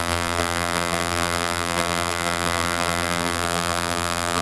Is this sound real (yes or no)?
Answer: no